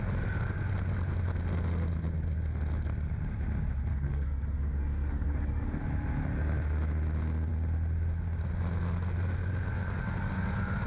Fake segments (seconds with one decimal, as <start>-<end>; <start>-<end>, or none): 3.9-5.8

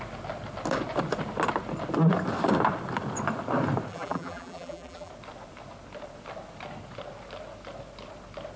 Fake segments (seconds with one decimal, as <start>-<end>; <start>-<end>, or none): 3.9-5.1

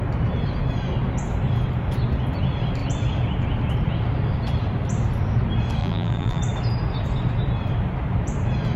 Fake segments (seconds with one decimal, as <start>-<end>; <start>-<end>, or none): 5.8-6.4

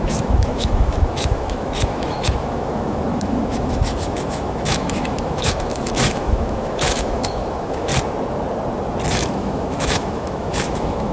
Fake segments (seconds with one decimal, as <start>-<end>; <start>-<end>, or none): 0.0-7.9; 9.1-11.1

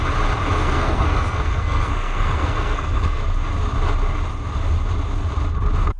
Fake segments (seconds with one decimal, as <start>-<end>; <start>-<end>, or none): 0.6-3.2

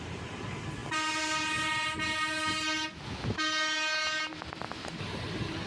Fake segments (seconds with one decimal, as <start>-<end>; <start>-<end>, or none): none

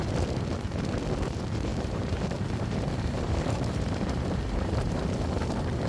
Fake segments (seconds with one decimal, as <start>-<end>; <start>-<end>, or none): 1.7-5.2

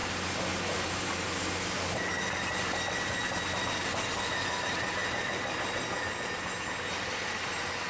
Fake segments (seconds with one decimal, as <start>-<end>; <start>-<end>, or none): 0.0-1.4